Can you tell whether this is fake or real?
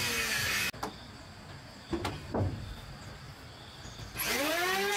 real